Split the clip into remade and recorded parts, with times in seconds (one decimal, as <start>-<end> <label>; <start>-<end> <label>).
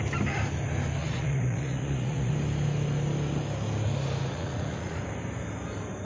0.0-1.0 recorded; 1.0-2.3 remade; 2.3-4.2 recorded; 4.2-5.0 remade; 5.0-6.0 recorded